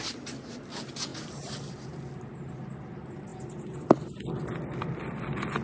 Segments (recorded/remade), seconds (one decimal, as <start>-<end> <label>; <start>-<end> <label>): 0.0-5.6 recorded